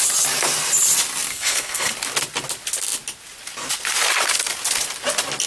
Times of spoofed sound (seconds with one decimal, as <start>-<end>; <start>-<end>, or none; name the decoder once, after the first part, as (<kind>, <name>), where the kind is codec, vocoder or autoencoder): 1.3-1.9 (codec, SNAC)